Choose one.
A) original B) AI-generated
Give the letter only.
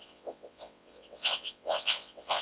B